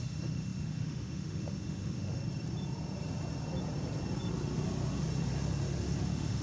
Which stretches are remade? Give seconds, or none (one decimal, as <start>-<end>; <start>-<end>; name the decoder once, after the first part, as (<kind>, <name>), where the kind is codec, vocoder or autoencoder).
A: 0.0-2.2 (autoencoder, DAC-VAE); 6.0-6.4